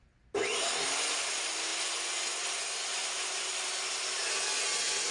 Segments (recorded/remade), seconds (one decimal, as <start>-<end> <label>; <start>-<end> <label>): 0.0-5.1 recorded

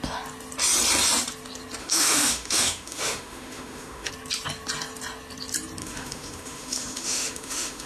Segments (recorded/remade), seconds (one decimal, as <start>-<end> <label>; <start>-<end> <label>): 0.0-1.8 recorded; 1.8-4.1 remade; 4.1-5.8 recorded; 5.8-7.9 remade

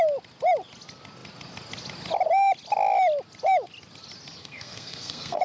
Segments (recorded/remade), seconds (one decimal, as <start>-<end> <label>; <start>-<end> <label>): 0.0-4.4 recorded; 4.4-5.4 remade

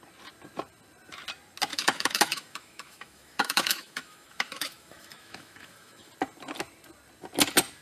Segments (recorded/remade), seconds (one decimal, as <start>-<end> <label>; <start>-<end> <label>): 0.0-1.7 recorded; 1.7-6.1 remade; 6.1-7.8 recorded

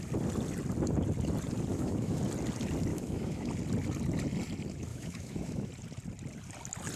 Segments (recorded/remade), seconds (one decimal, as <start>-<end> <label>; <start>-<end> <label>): 0.0-1.7 recorded; 1.7-2.2 remade; 2.2-2.9 recorded; 2.9-3.5 remade; 3.5-4.9 recorded; 4.9-5.7 remade; 5.7-7.0 recorded

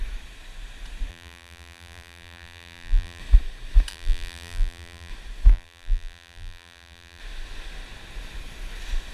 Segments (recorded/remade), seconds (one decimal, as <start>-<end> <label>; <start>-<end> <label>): 0.0-1.1 recorded; 1.1-3.2 remade; 3.2-3.9 recorded; 3.9-5.1 remade; 5.1-5.5 recorded; 5.5-7.2 remade; 7.2-9.1 recorded

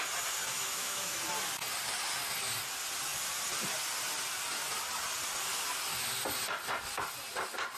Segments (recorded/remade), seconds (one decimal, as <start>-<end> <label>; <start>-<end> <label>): 0.0-0.5 recorded; 0.5-1.2 remade; 1.2-7.8 recorded